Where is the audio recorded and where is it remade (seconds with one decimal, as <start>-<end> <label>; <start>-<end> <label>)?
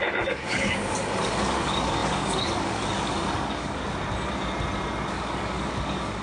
0.0-3.8 remade; 3.8-5.1 recorded; 5.1-6.2 remade